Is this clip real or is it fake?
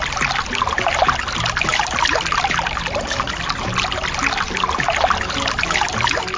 real